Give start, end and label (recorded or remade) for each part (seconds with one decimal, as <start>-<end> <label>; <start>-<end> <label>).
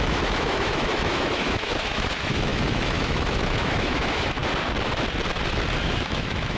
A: 0.0-4.4 remade; 4.4-5.8 recorded; 5.8-6.6 remade